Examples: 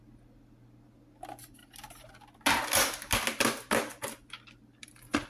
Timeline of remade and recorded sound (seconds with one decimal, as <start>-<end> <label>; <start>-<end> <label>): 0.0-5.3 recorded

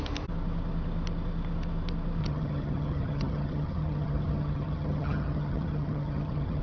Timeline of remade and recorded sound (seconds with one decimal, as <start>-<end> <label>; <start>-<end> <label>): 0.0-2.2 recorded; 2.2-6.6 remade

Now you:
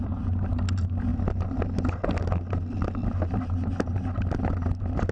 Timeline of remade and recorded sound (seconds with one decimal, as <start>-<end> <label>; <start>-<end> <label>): 0.0-5.1 recorded

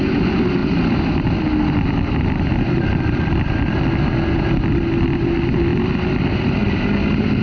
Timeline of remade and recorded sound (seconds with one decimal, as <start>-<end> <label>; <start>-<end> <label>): 0.0-7.4 recorded

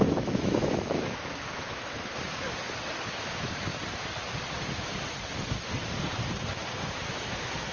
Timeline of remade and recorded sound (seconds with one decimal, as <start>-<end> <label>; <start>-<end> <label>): 0.0-2.1 remade; 2.1-3.1 recorded; 3.1-3.7 remade; 3.7-6.8 recorded; 6.8-7.7 remade